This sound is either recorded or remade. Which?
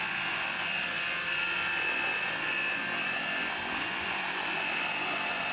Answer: remade